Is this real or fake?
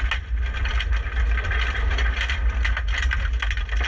real